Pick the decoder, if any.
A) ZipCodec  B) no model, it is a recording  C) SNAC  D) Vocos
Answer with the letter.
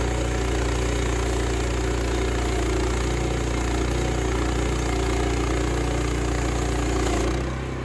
B